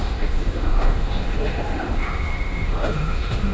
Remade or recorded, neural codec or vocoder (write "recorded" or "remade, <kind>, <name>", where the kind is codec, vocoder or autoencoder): remade, autoencoder, DAC-VAE